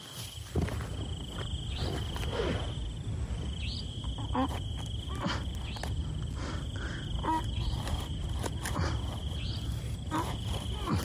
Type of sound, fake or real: real